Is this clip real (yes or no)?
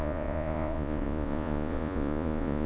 no